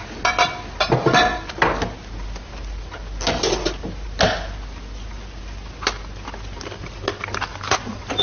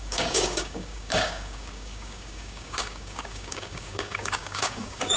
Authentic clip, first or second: first